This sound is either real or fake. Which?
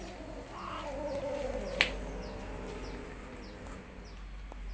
real